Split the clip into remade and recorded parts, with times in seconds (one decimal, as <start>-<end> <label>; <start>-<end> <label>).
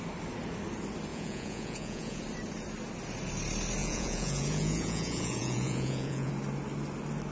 0.0-1.1 recorded; 1.1-2.2 remade; 2.2-3.8 recorded; 3.8-6.3 remade; 6.3-7.3 recorded